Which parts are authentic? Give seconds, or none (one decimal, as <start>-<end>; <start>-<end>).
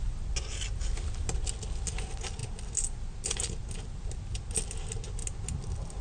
0.0-6.0